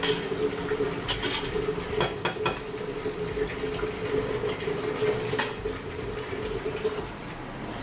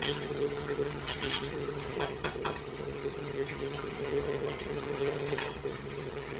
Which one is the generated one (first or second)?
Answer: second